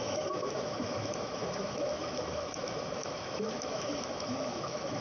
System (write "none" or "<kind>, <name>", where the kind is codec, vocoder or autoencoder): autoencoder, DAC-VAE